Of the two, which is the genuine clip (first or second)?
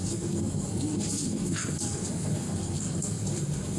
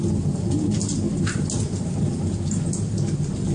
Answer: second